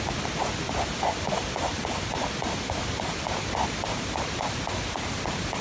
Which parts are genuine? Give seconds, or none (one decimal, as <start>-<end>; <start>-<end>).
0.0-5.6